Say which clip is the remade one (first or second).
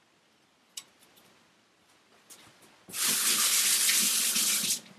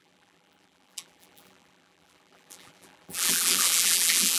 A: second